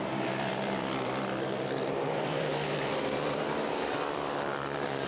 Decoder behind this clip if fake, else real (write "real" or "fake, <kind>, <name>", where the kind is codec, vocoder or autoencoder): fake, vocoder, BigVGAN v2